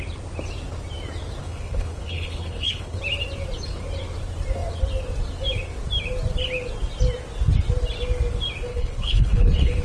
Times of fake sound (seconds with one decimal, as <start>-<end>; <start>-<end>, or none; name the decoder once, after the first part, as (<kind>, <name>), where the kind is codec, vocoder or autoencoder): 1.4-3.0 (codec, HILCodec); 8.7-9.8